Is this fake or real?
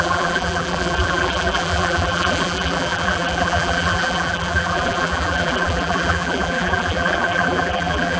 fake